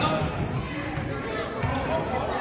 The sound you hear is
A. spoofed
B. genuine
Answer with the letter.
B